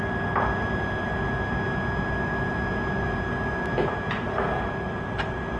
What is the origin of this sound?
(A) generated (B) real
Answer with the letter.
B